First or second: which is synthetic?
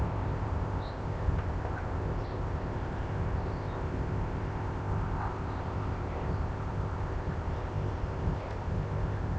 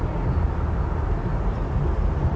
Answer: first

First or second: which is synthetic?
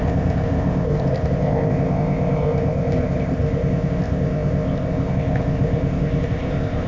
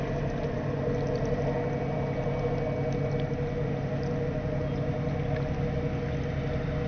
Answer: first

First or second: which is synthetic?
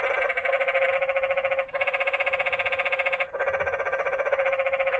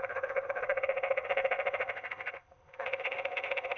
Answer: second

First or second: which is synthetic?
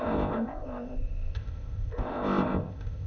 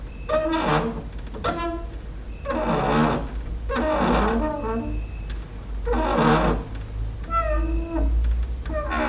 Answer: first